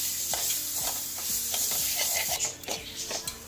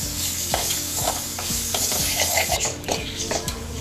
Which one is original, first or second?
first